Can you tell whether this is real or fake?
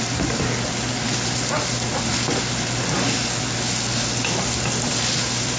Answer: real